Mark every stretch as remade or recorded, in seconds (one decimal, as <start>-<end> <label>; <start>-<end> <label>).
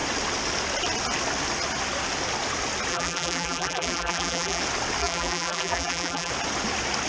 0.0-2.9 recorded; 2.9-4.6 remade; 4.6-5.0 recorded; 5.0-6.3 remade; 6.3-7.1 recorded